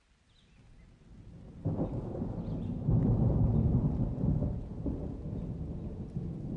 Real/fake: real